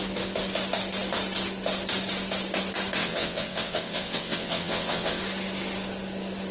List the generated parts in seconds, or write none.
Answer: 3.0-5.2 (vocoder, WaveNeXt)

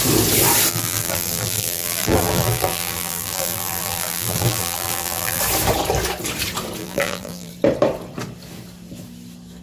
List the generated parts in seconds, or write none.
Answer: 0.7-5.4 (vocoder, BigVGAN v2); 6.8-7.5